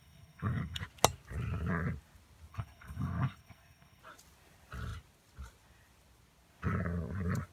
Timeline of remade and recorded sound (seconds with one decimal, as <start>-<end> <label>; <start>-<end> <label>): 0.0-0.8 remade; 0.8-2.5 recorded; 2.5-4.0 remade; 4.0-7.5 recorded